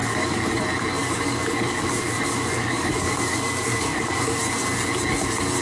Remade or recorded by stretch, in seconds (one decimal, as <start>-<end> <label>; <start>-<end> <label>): 0.0-0.6 remade; 0.6-1.0 recorded; 1.0-4.4 remade; 4.4-5.6 recorded